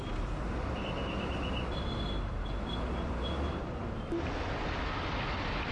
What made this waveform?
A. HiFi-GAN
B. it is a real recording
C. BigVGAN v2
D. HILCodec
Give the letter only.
B